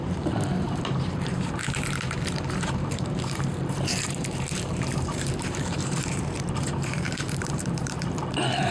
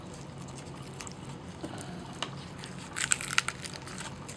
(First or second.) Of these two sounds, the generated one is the first